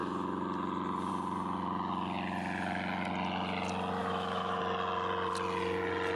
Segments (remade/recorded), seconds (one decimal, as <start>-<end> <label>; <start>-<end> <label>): 0.0-4.0 recorded; 4.0-4.6 remade; 4.6-6.2 recorded